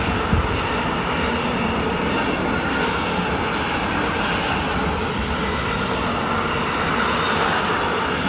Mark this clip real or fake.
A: real